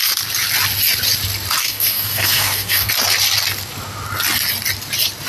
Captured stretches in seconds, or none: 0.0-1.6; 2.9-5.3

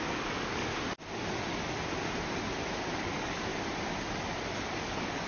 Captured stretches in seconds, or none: 0.7-2.9; 3.5-4.5

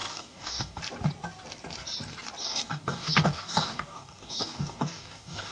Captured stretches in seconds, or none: 0.8-2.4

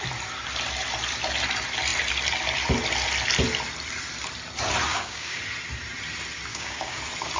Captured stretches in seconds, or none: 0.0-4.9; 5.4-6.5; 7.0-7.4

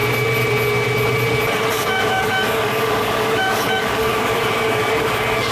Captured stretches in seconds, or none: 0.0-1.7